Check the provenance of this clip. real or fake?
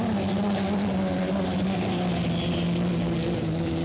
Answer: real